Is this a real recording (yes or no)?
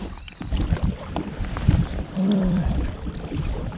no